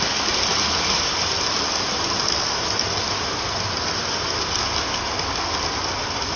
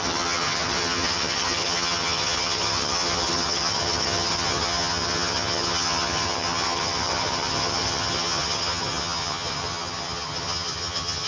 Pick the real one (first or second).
first